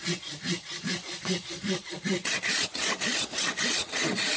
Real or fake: fake